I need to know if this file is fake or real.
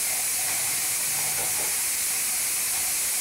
real